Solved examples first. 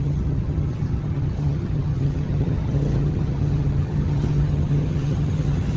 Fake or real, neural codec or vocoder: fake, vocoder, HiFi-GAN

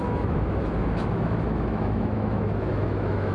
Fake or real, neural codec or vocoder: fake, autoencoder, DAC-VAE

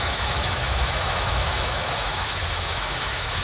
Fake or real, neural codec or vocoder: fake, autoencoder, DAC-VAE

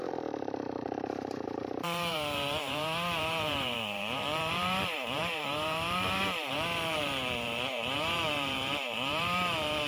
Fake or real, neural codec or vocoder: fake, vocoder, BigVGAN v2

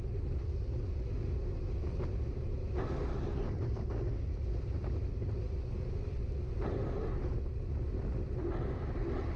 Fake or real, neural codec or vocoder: real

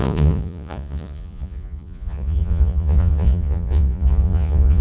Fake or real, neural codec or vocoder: fake, vocoder, Vocos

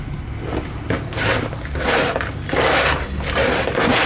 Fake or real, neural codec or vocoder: real